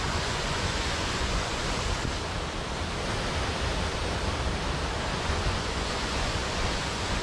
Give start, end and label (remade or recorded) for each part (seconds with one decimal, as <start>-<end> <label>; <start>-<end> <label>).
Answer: 0.0-2.0 remade; 2.0-5.1 recorded; 5.1-7.2 remade